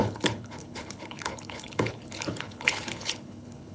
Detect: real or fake fake